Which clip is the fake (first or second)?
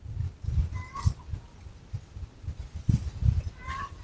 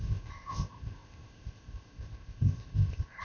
second